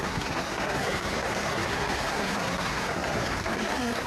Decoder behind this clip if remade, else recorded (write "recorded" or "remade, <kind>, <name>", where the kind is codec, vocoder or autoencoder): remade, codec, SNAC